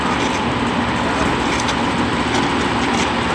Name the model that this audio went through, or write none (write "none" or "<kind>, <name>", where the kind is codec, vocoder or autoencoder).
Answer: none